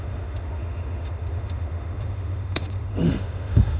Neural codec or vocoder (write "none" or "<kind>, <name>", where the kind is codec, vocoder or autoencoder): autoencoder, DAC-VAE